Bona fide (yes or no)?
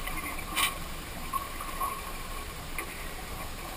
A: no